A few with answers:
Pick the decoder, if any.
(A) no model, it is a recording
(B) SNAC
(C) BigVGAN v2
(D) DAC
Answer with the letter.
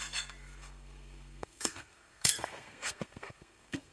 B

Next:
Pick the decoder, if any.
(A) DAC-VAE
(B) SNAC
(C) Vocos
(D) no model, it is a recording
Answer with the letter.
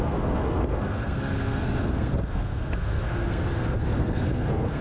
B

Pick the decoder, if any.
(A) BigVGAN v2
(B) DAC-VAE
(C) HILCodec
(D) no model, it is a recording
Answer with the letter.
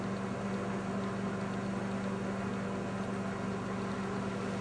D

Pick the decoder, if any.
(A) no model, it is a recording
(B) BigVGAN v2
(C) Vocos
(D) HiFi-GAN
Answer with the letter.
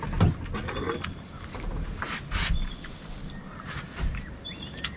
A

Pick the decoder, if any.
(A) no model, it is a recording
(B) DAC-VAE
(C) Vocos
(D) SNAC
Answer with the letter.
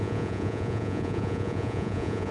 C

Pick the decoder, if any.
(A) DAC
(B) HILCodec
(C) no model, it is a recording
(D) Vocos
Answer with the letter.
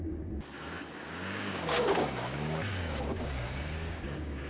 A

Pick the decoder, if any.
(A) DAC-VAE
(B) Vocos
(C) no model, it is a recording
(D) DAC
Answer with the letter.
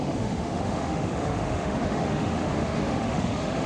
A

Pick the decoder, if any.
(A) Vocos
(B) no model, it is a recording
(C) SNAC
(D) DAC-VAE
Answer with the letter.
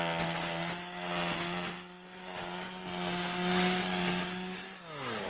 B